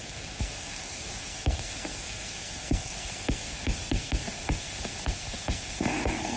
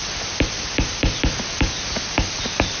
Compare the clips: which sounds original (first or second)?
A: second